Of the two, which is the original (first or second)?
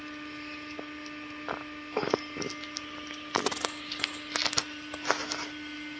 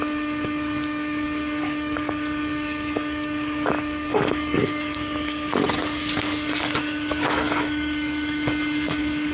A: first